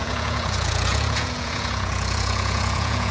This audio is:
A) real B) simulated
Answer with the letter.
B